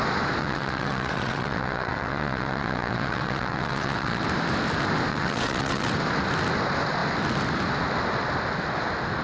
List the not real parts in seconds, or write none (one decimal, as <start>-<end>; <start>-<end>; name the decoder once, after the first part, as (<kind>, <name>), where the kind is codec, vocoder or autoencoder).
0.4-4.2 (vocoder, WaveNeXt); 5.1-5.9